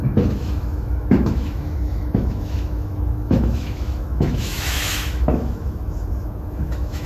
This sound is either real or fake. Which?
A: fake